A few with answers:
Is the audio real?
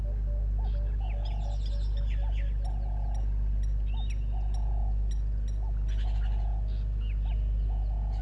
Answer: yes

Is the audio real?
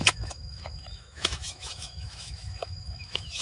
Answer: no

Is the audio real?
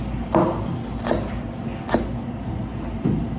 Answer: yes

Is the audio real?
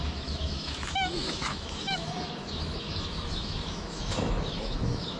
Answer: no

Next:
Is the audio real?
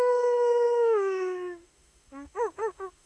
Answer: no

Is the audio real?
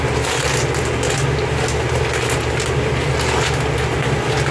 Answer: yes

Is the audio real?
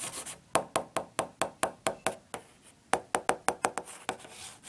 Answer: yes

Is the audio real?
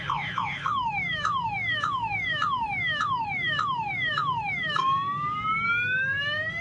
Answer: no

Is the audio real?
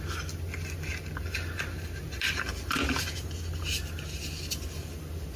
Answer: yes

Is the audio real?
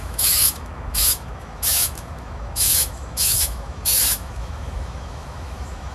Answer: no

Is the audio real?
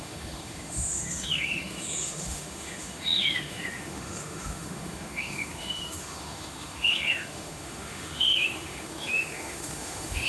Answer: no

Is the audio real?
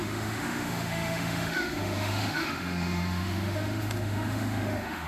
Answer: no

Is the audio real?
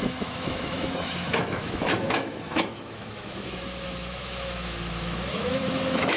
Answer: no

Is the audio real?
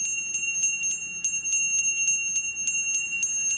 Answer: yes